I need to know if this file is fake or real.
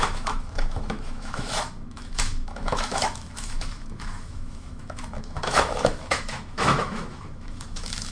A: fake